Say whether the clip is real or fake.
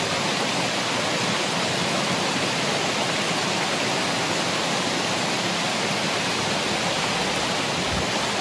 real